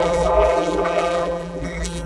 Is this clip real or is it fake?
fake